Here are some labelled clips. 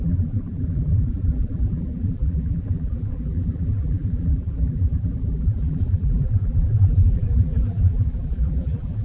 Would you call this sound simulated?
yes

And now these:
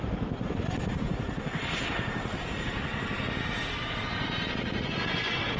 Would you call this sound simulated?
yes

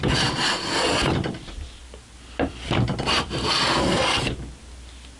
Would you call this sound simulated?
no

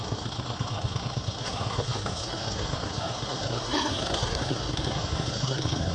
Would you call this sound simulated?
yes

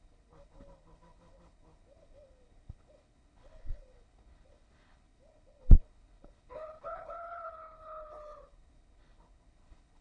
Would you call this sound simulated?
yes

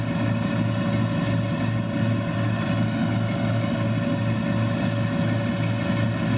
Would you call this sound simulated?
no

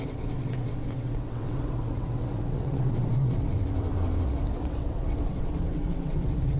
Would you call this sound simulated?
yes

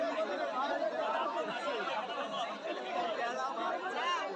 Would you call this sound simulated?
no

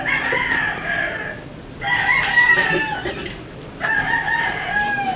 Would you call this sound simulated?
no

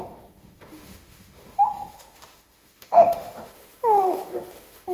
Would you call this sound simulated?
yes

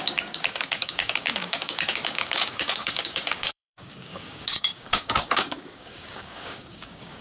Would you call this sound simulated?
yes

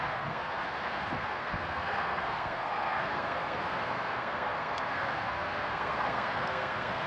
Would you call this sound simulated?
yes